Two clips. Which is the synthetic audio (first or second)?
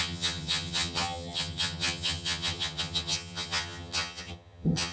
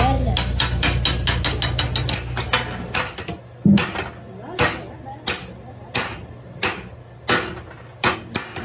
first